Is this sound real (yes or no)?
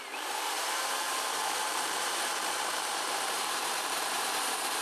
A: no